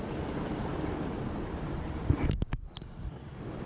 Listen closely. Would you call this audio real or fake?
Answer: fake